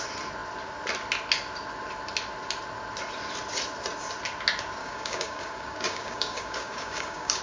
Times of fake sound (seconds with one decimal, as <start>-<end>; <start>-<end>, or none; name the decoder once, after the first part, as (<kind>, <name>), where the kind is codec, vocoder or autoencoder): 4.8-7.4 (codec, DAC)